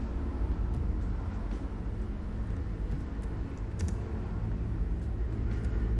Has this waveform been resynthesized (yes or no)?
no